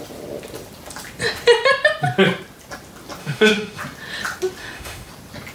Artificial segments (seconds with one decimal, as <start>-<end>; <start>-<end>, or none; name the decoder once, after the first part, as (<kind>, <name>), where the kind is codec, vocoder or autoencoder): 3.2-3.8 (autoencoder, DAC-VAE); 4.6-5.1